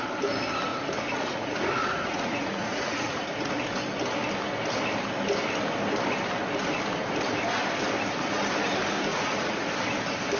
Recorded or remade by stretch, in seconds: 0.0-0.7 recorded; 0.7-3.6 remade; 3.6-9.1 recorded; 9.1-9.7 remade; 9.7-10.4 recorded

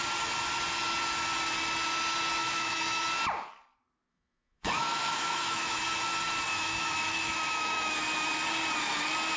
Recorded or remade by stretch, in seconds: 0.0-2.4 recorded; 2.4-3.0 remade; 3.0-4.1 recorded; 4.1-5.8 remade; 5.8-6.5 recorded; 6.5-8.0 remade; 8.0-9.4 recorded

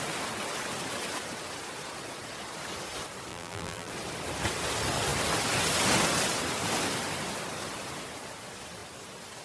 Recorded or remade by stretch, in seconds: 0.0-3.3 recorded; 3.3-3.9 remade; 3.9-9.4 recorded

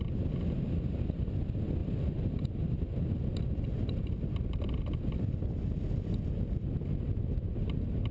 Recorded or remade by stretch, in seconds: 0.0-8.1 recorded